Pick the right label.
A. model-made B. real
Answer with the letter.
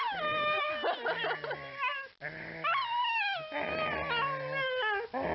B